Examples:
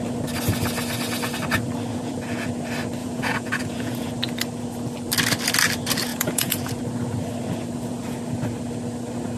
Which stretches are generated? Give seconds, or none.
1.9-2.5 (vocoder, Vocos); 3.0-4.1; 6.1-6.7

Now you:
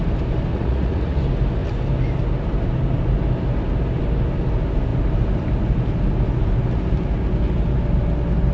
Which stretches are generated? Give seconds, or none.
0.5-1.2 (vocoder, Vocos)

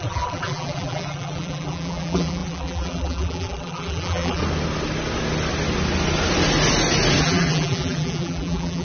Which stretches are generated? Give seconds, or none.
0.0-4.4 (vocoder, BigVGAN v2); 7.2-8.8